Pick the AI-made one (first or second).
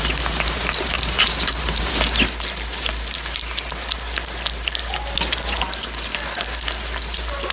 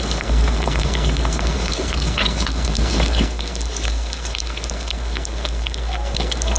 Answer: second